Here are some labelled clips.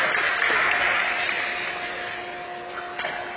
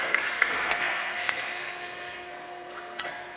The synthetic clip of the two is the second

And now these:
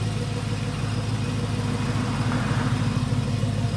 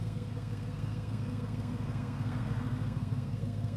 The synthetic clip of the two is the second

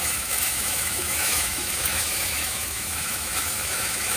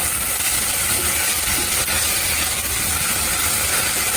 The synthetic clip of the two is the first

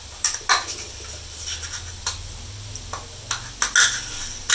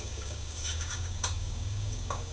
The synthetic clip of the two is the second